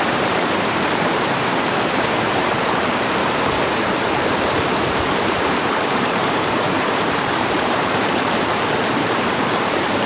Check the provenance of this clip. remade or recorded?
remade